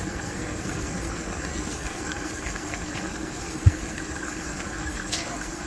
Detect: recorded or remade remade